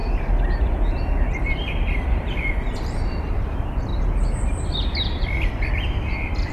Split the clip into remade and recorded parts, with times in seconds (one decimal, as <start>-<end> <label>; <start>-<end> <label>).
0.0-3.9 remade; 3.9-5.5 recorded; 5.5-6.5 remade